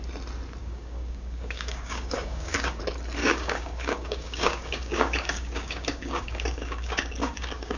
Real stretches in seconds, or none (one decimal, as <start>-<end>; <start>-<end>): 0.0-0.6; 2.8-3.2